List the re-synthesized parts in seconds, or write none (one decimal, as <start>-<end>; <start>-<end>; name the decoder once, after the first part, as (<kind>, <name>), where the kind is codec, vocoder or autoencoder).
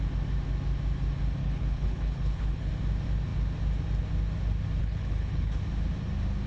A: 1.4-2.7 (codec, HILCodec); 4.8-5.6